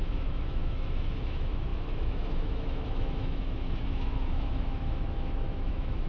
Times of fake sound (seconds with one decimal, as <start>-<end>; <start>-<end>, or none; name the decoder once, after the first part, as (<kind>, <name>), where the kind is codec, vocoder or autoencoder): 0.0-6.1 (autoencoder, DAC-VAE)